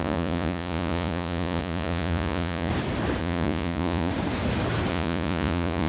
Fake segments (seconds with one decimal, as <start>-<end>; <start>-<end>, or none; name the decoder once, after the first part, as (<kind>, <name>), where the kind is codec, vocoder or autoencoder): 0.0-2.7 (vocoder, Vocos); 3.2-4.1; 4.9-5.9